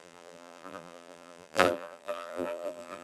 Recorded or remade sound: remade